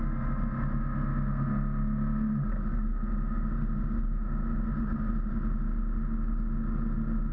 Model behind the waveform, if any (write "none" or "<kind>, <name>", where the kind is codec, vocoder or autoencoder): none